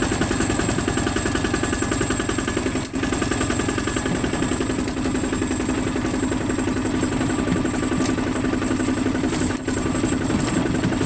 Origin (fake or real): real